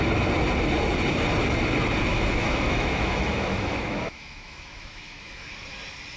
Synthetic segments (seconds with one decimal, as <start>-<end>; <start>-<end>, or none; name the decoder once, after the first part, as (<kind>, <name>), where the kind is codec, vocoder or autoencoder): 2.1-5.5 (autoencoder, DAC-VAE)